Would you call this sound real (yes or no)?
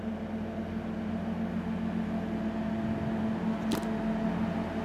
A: yes